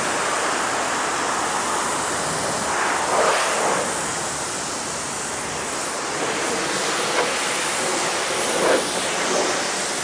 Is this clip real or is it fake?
real